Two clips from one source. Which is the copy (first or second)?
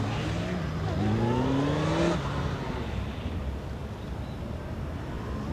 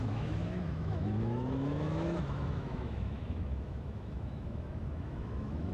second